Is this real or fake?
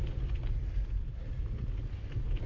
real